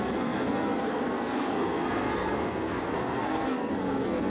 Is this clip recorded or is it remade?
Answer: remade